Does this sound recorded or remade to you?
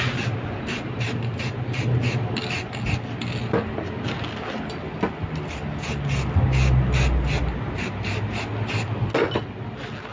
recorded